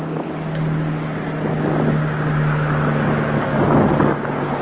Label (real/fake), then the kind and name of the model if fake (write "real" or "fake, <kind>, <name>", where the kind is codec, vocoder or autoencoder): real